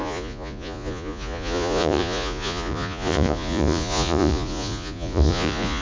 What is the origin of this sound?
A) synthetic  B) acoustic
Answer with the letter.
A